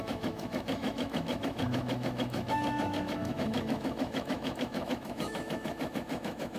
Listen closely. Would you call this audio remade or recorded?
remade